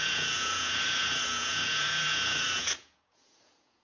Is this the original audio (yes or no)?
no